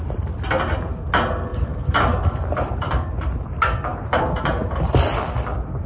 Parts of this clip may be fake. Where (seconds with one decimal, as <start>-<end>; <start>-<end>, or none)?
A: 3.9-4.9